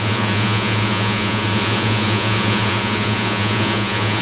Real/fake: fake